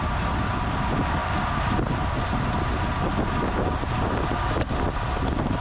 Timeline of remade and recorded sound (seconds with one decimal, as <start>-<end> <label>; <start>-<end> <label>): 0.0-5.6 recorded